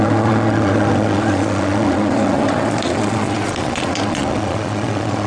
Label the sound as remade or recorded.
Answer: remade